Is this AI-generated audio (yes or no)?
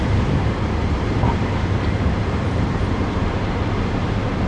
yes